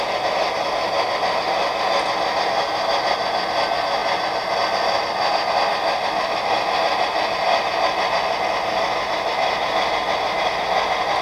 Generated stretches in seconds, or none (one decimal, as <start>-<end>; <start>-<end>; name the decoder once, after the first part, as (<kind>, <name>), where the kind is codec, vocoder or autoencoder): none